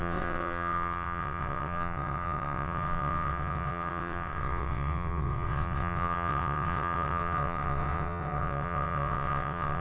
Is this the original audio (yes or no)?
no